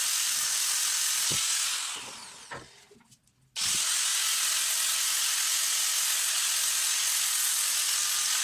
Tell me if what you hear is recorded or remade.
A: recorded